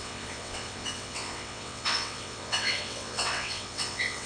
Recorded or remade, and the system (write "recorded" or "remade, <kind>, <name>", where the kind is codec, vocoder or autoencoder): remade, vocoder, WaveNeXt